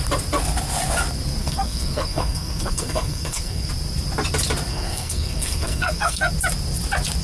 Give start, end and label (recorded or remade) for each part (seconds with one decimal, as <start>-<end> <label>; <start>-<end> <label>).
0.0-1.4 recorded; 1.4-3.7 remade; 3.7-4.7 recorded; 4.7-6.3 remade; 6.3-7.2 recorded